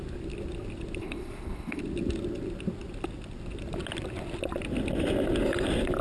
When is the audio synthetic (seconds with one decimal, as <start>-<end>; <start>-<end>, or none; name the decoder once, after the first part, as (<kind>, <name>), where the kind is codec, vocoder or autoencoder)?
1.0-1.8 (codec, HILCodec)